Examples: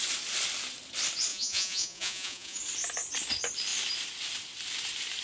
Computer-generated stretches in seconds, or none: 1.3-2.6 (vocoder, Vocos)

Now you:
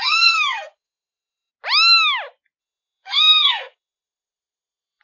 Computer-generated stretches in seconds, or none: 0.0-1.5 (codec, SNAC); 2.6-5.0

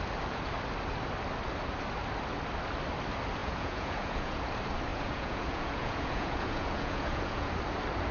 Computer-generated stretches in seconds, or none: 3.4-4.5 (vocoder, Vocos); 4.9-7.5

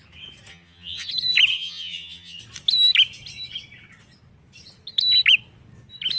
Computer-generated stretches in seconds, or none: 0.5-1.1 (vocoder, HiFi-GAN); 1.5-2.4